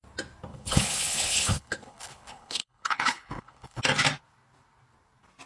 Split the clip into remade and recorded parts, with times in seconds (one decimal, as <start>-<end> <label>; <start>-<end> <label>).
0.0-0.5 recorded; 0.5-3.8 remade; 3.8-5.5 recorded

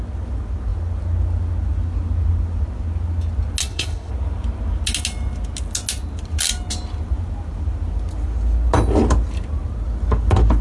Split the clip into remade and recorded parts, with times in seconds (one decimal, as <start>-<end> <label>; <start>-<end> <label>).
0.0-3.6 recorded; 3.6-4.1 remade; 4.1-10.6 recorded

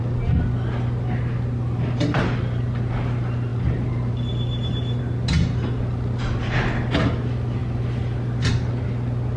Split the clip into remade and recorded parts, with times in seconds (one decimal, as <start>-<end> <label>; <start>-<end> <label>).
0.0-3.5 recorded; 3.5-5.0 remade; 5.0-7.6 recorded; 7.6-8.5 remade; 8.5-9.4 recorded

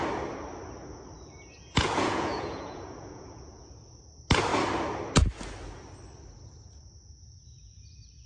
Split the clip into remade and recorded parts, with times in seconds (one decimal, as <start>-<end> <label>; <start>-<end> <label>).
0.0-1.6 recorded; 1.6-3.7 remade; 3.7-8.3 recorded

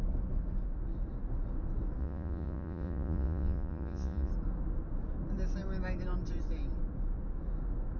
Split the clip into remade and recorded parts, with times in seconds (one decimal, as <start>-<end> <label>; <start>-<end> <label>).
0.0-2.0 recorded; 2.0-4.3 remade; 4.3-8.0 recorded

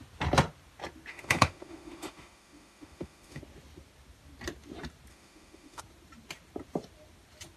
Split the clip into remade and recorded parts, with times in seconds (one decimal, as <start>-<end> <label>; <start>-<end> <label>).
0.0-1.1 recorded; 1.1-3.4 remade; 3.4-5.1 recorded; 5.1-5.8 remade; 5.8-7.6 recorded

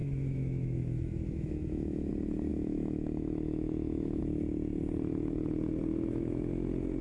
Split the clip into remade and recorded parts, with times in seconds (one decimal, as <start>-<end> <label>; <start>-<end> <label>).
0.0-2.1 remade; 2.1-2.5 recorded; 2.5-4.2 remade; 4.2-5.9 recorded; 5.9-6.5 remade; 6.5-7.0 recorded

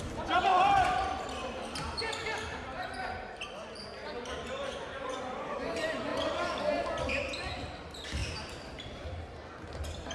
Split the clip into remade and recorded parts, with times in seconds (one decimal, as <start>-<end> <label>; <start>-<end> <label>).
0.0-0.5 recorded; 0.5-4.7 remade; 4.7-8.2 recorded; 8.2-9.2 remade; 9.2-10.1 recorded